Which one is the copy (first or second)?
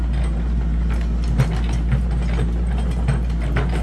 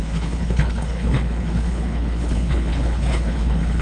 second